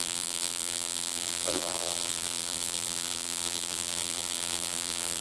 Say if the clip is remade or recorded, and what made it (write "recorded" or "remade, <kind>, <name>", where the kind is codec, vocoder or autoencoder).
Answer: remade, vocoder, BigVGAN v2